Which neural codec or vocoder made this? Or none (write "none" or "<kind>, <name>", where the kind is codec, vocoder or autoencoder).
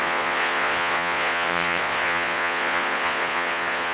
vocoder, Vocos